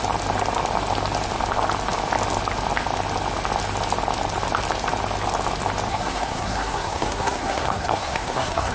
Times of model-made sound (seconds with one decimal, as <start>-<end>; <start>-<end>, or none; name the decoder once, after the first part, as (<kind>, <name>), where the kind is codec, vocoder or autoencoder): 5.9-8.7 (codec, SNAC)